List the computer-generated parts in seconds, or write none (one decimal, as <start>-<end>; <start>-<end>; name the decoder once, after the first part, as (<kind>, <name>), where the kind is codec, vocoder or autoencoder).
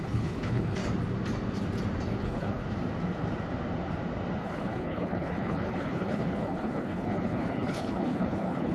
0.0-0.8 (codec, HILCodec); 2.2-2.6; 4.4-8.7